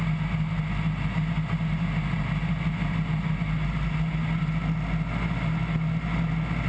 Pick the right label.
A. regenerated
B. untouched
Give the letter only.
B